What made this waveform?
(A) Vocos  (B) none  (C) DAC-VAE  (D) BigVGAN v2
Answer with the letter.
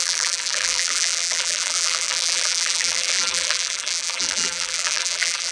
D